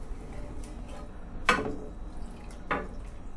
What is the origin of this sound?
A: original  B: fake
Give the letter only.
A